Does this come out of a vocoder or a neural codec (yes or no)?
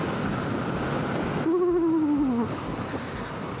no